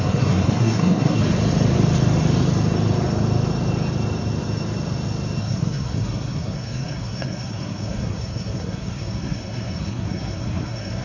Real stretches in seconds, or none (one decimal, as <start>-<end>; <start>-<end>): 1.2-5.4